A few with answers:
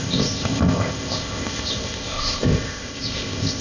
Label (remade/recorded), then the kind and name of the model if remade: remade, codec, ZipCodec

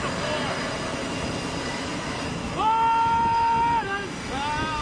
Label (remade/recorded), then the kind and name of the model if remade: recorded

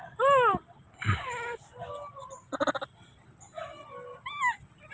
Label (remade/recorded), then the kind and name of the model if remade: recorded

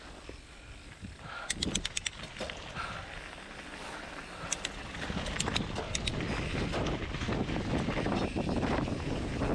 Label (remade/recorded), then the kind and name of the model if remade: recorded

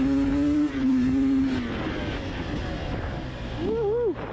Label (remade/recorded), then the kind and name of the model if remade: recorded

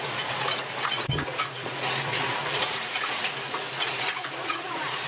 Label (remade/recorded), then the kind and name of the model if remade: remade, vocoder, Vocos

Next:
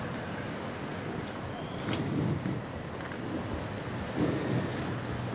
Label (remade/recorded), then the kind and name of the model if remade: recorded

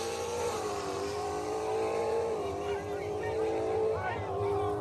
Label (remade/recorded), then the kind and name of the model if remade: remade, vocoder, BigVGAN v2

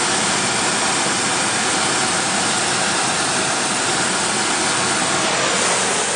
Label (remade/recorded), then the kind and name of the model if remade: recorded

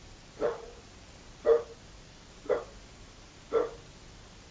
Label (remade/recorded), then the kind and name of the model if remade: recorded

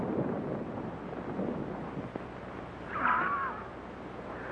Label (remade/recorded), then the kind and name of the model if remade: recorded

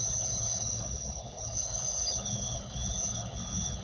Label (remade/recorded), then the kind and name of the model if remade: remade, codec, HILCodec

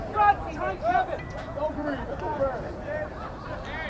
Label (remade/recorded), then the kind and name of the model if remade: remade, vocoder, BigVGAN v2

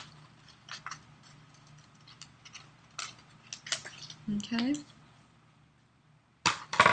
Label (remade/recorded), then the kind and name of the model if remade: recorded